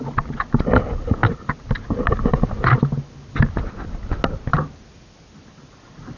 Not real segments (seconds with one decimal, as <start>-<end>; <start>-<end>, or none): none